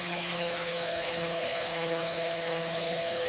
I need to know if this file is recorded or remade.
remade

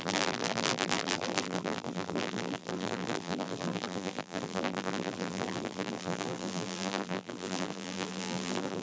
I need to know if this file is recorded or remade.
remade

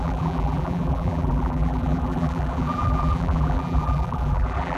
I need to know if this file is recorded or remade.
remade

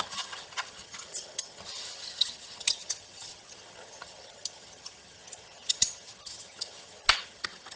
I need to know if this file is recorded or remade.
remade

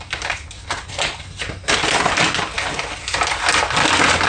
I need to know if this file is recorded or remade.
recorded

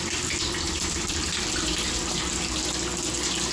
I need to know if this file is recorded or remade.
recorded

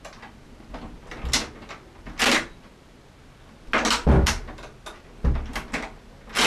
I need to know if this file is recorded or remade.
recorded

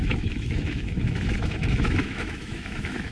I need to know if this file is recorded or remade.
remade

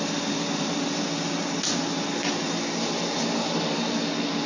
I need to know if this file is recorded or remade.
recorded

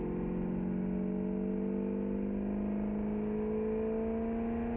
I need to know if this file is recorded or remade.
recorded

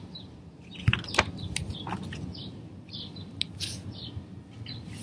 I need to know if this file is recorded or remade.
recorded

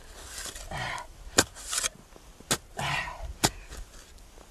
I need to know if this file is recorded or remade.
recorded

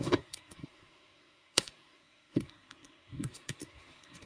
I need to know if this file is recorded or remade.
remade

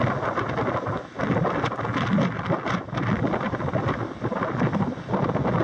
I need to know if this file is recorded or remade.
recorded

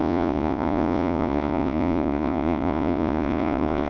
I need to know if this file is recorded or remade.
remade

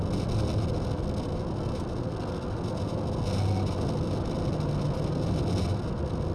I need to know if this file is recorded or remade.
recorded